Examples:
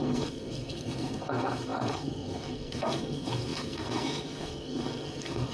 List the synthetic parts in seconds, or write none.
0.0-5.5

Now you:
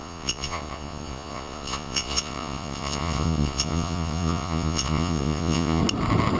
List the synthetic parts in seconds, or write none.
0.0-5.8

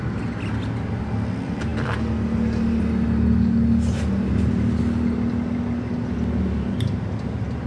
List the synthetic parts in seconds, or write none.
none

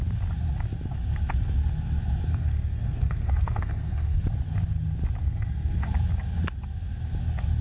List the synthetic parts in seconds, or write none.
2.3-4.2; 5.2-5.9

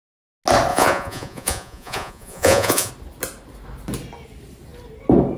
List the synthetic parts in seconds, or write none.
0.7-2.9

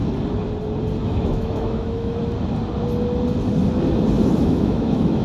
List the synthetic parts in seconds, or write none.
1.0-2.2; 4.4-5.2